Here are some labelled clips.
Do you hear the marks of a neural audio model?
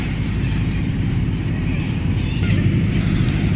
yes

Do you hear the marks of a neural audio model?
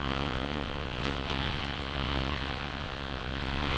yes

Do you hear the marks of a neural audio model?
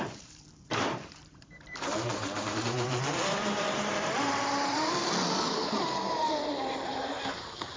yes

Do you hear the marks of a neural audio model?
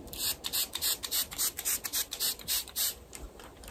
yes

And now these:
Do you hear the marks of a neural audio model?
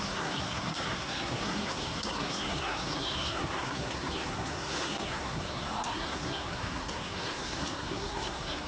yes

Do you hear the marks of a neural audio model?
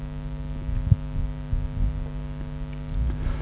no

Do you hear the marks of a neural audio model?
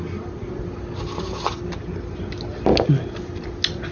no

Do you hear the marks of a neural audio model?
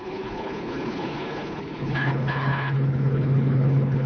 yes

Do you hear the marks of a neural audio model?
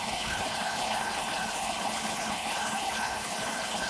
yes